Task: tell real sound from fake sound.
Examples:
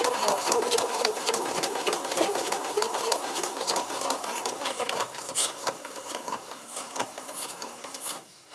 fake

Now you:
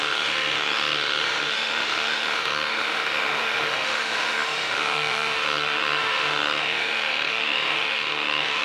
fake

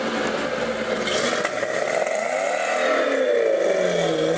real